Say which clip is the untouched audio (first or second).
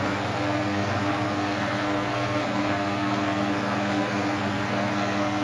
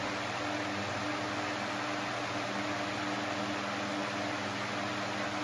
second